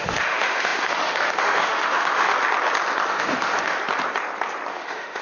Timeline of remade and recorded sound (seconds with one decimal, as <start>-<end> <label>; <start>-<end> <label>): 0.0-2.3 remade; 2.3-3.1 recorded; 3.1-3.8 remade; 3.8-4.7 recorded; 4.7-5.2 remade

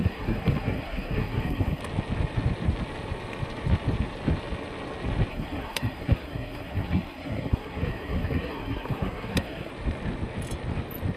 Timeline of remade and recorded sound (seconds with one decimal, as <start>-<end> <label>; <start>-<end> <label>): 0.0-1.8 remade; 1.8-5.3 recorded; 5.3-9.7 remade; 9.7-11.2 recorded

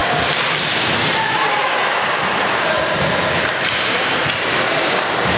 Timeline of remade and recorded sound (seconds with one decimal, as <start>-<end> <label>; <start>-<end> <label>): 0.0-5.4 recorded

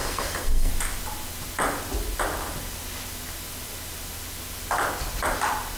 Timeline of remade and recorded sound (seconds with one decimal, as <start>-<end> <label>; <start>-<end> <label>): 0.0-0.7 remade; 0.7-5.8 recorded